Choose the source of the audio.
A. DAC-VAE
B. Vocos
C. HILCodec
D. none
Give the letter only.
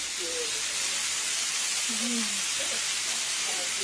D